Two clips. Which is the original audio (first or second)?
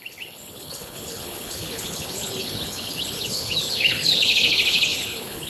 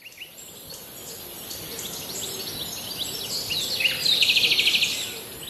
second